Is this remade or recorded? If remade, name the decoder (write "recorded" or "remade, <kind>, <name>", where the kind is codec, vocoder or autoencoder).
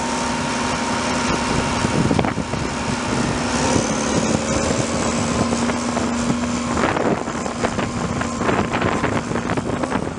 recorded